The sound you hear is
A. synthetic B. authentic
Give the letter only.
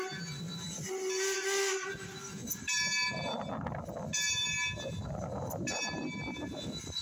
B